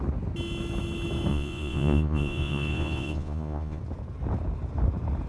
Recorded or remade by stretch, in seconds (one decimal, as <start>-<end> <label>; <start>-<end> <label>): 0.0-1.3 recorded; 1.3-3.8 remade; 3.8-5.3 recorded